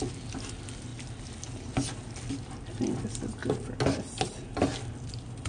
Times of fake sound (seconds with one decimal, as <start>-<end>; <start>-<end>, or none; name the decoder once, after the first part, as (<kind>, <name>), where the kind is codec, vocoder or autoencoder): 0.9-1.7 (vocoder, BigVGAN v2)